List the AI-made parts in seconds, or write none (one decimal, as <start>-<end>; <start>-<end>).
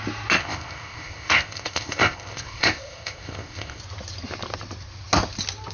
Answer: 0.4-3.8